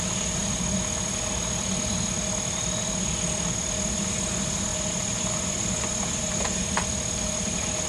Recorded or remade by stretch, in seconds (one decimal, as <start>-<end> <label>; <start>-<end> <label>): 0.0-7.9 recorded